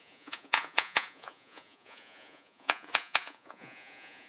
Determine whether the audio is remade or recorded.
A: remade